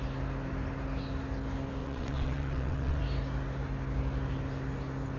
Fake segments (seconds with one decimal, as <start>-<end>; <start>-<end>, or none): 1.8-3.0